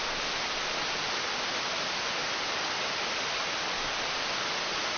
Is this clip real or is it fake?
real